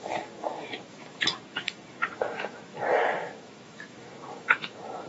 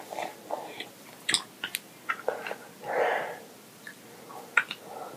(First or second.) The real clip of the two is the second